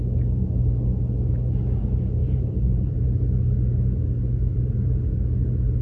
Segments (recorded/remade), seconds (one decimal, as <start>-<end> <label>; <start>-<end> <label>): 0.0-2.2 recorded; 2.2-3.2 remade; 3.2-4.5 recorded; 4.5-5.0 remade; 5.0-5.8 recorded